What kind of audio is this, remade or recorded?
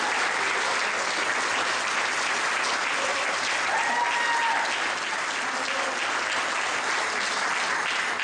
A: recorded